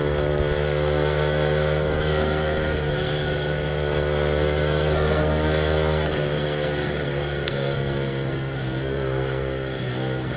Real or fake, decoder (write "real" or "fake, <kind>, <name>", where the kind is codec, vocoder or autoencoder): fake, codec, SNAC